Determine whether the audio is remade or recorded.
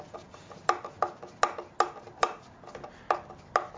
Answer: recorded